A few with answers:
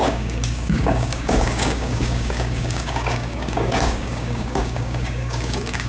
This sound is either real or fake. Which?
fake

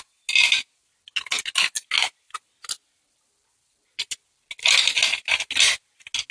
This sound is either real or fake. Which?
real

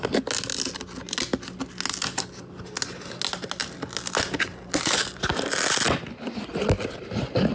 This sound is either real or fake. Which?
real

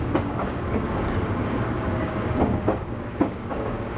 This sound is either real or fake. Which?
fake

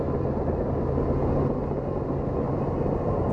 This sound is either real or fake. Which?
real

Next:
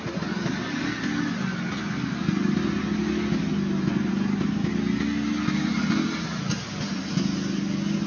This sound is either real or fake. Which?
real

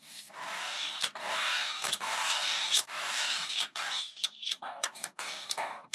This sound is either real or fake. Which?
fake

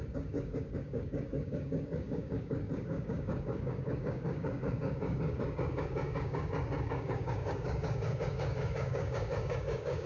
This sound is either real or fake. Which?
fake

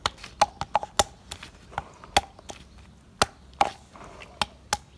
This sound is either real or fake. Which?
real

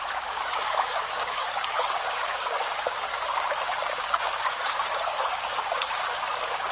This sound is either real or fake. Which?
fake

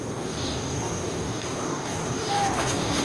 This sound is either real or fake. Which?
fake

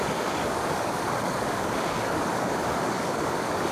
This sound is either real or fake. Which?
fake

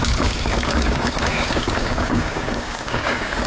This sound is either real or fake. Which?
fake